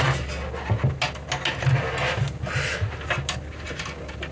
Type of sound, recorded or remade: recorded